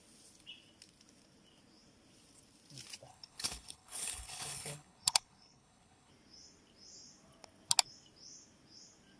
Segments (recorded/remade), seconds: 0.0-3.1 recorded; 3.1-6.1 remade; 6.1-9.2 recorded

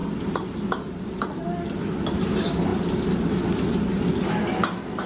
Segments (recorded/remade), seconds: 0.0-5.1 recorded